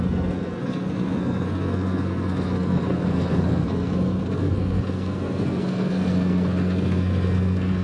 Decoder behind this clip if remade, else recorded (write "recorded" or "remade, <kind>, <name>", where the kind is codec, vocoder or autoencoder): remade, codec, SNAC